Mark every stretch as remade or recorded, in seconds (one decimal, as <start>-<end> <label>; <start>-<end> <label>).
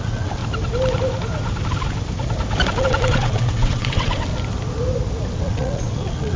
0.0-0.4 remade; 0.4-2.8 recorded; 2.8-4.3 remade; 4.3-5.3 recorded; 5.3-6.4 remade